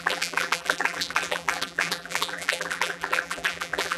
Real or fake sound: fake